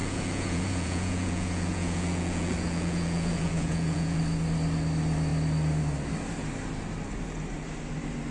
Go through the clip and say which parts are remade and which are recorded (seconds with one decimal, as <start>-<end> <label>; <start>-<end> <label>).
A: 0.0-4.2 remade; 4.2-8.3 recorded